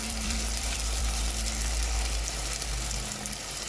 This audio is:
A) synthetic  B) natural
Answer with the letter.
A